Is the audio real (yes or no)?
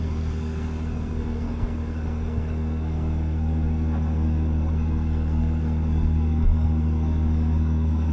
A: no